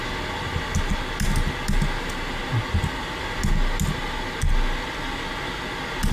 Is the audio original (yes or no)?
yes